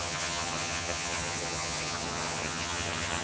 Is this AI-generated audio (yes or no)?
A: yes